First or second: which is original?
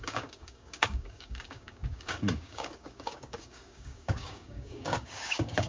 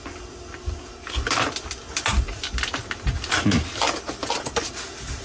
second